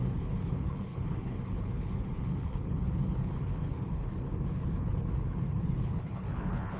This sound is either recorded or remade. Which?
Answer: remade